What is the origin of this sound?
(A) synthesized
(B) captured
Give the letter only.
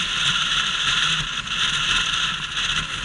B